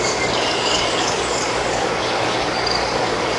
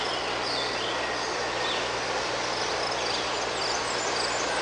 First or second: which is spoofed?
first